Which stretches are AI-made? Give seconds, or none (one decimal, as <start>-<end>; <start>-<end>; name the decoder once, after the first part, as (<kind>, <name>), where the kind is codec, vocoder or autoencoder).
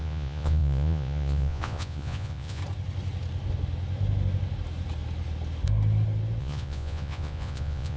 0.0-2.6 (vocoder, Vocos); 6.4-8.0